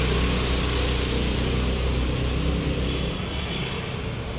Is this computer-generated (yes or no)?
no